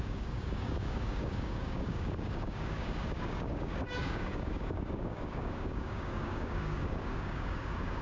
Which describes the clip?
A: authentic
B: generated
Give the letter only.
B